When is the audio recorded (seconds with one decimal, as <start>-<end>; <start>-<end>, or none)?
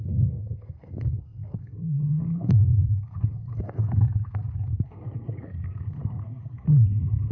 none